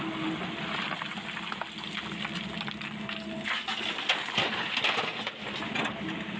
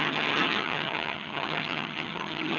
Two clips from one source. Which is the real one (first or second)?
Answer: first